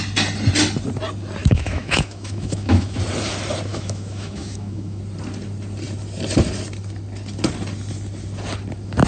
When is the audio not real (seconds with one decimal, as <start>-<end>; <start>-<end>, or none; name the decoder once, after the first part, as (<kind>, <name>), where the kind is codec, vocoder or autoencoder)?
1.4-3.0 (autoencoder, DAC-VAE); 3.7-5.0